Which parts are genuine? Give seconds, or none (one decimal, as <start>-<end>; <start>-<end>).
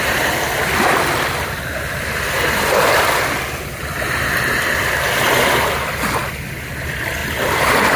0.0-8.0